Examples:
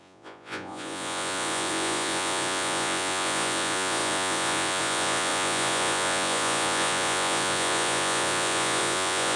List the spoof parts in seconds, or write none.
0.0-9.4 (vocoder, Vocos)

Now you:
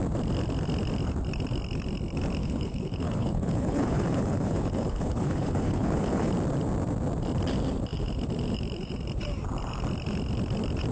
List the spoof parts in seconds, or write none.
2.4-6.3 (codec, HILCodec)